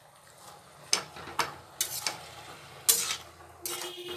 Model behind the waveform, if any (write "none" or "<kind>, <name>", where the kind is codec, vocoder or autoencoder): none